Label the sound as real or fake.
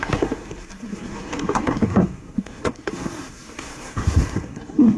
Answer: fake